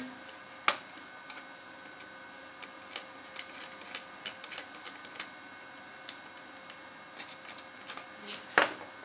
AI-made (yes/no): no